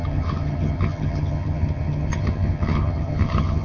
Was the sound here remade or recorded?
remade